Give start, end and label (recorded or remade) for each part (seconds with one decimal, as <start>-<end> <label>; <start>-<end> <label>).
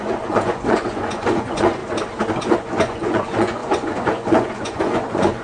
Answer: 0.0-1.8 remade; 1.8-2.4 recorded; 2.4-5.4 remade